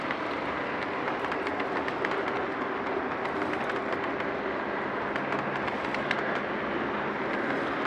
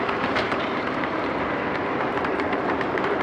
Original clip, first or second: first